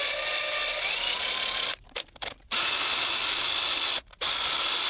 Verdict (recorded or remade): recorded